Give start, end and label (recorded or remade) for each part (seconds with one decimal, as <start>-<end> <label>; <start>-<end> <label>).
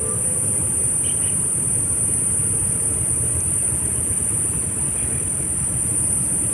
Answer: 0.0-3.6 recorded; 3.6-4.4 remade; 4.4-6.5 recorded